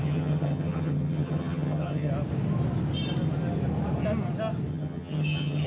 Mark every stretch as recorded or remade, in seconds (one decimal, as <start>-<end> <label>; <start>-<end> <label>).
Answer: 0.0-2.1 remade; 2.1-4.7 recorded; 4.7-5.7 remade